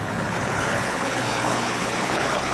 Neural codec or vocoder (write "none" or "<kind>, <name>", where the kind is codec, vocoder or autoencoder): codec, HILCodec